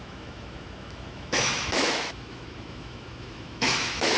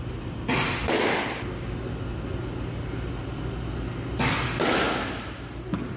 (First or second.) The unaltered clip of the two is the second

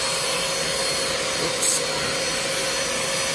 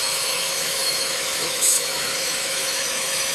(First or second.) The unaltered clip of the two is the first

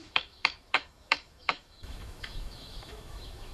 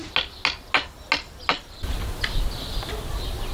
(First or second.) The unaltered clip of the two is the second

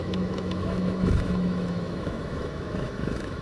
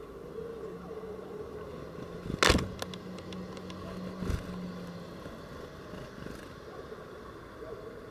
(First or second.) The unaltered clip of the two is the second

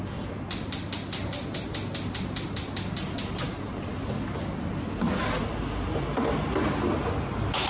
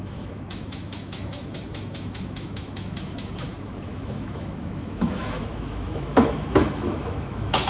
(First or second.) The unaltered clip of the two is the first